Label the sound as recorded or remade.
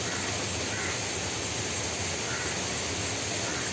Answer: recorded